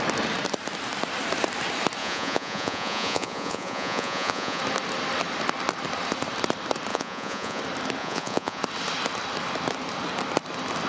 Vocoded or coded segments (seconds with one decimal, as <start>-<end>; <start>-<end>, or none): 2.0-4.6; 6.9-7.6; 8.0-8.6

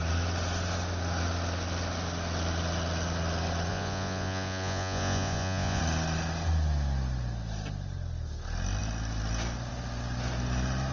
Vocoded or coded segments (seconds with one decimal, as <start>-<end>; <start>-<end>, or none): 3.7-5.8

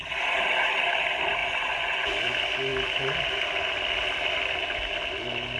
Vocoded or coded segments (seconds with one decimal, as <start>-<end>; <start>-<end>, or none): 1.4-2.1

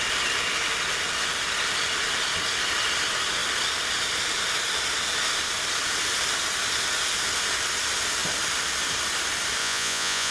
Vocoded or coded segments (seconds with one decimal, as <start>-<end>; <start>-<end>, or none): 9.6-10.3

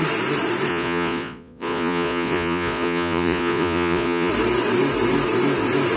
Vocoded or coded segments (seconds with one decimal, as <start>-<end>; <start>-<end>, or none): 0.7-4.3